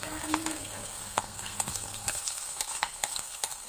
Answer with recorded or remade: remade